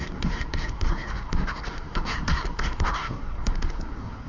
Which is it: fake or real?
fake